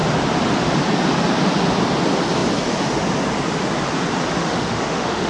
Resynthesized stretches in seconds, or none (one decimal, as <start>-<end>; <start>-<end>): 4.4-5.3